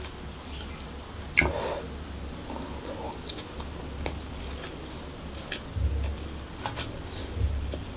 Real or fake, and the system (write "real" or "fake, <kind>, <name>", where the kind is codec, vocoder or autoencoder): real